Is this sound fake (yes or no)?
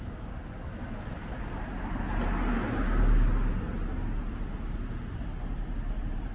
no